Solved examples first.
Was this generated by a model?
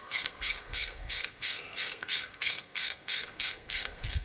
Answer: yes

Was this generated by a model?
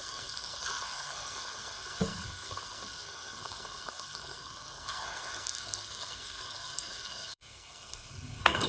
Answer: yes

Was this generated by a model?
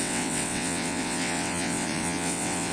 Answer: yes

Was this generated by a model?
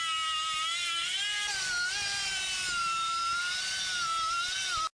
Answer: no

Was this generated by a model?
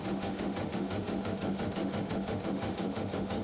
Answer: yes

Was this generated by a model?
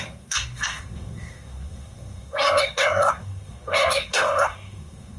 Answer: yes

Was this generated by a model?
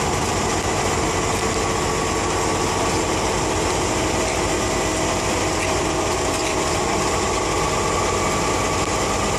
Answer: no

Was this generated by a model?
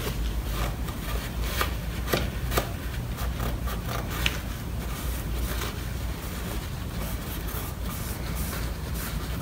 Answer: no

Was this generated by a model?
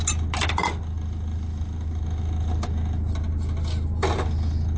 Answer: no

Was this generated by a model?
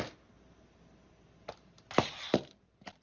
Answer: no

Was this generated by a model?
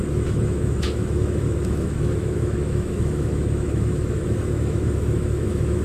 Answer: yes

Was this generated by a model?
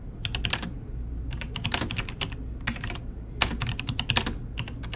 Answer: no